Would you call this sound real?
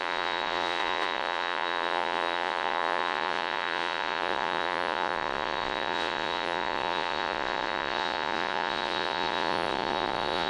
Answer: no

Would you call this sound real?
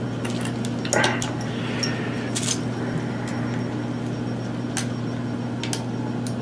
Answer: yes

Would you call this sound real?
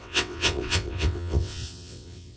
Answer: no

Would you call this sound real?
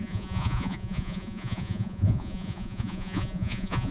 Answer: no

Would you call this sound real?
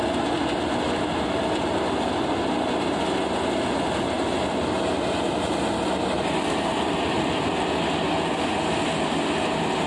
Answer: yes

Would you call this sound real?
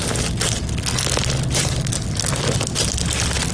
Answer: yes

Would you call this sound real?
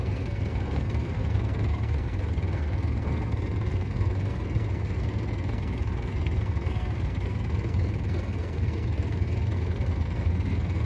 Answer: no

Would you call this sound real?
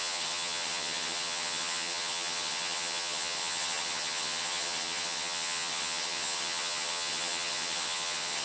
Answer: no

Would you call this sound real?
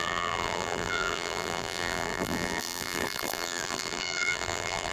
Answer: no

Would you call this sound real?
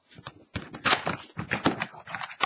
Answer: yes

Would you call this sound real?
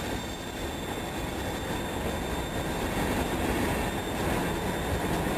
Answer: yes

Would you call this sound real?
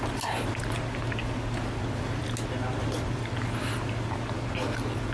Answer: yes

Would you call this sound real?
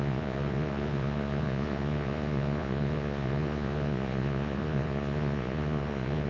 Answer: no